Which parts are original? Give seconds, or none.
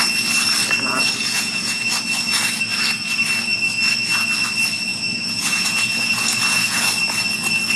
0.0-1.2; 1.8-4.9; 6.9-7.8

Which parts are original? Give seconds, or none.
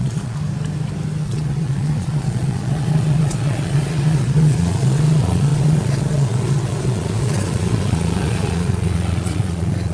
0.4-1.2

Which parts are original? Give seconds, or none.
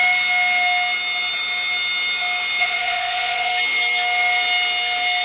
0.0-2.6; 3.5-5.2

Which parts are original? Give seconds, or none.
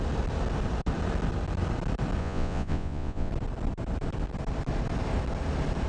0.0-2.2; 3.3-5.9